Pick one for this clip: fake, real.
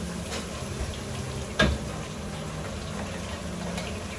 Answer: real